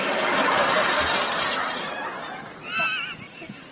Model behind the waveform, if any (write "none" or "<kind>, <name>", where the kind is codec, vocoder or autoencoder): none